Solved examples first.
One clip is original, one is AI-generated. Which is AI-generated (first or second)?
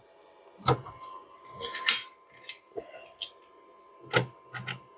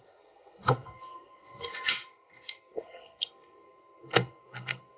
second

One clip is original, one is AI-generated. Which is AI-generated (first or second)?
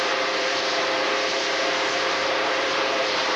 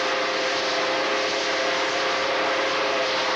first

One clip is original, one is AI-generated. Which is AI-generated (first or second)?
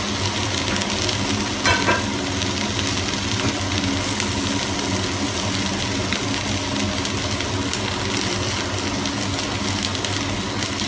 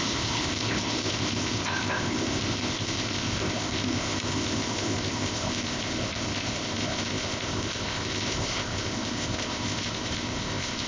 second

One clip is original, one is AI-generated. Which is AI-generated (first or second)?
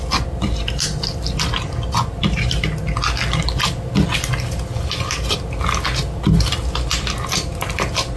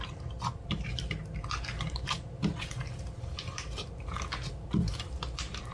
second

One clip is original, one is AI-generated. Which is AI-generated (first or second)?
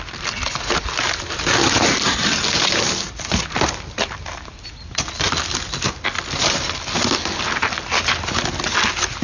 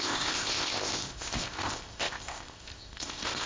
second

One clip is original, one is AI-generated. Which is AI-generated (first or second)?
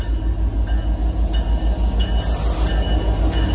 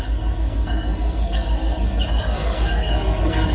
second